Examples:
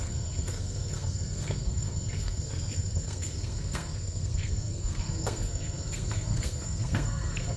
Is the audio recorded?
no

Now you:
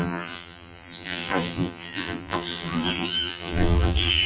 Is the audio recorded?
no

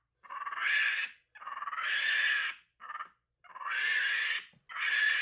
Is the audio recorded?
yes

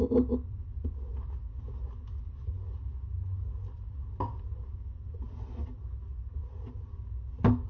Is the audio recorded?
yes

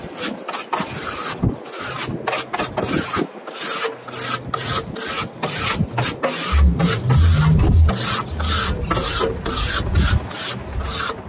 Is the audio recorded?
yes